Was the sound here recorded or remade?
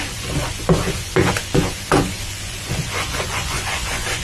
remade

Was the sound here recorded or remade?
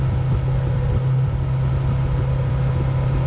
recorded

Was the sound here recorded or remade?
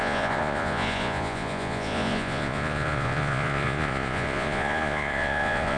remade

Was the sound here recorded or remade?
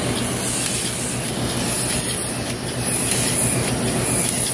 recorded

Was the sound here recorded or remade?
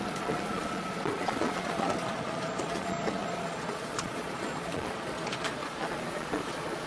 remade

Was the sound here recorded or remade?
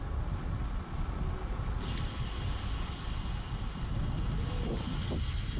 recorded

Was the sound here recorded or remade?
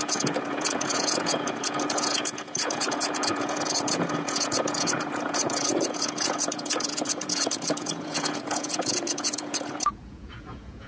remade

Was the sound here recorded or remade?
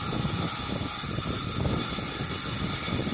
recorded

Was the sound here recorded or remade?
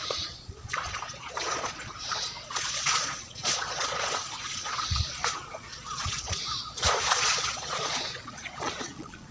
remade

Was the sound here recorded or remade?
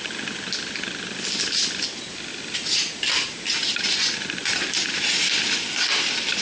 recorded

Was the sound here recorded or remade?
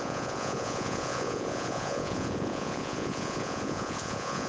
remade